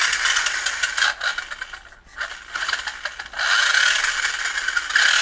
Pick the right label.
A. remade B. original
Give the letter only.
B